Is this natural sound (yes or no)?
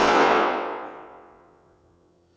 no